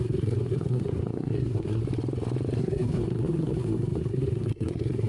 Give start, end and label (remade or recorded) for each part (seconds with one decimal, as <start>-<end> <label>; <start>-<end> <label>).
0.0-1.8 remade; 1.8-2.6 recorded; 2.6-5.1 remade